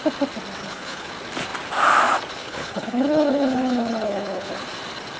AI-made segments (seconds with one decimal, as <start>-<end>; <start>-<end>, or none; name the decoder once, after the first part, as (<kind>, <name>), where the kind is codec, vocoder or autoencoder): 0.6-1.1 (codec, HILCodec); 2.4-4.5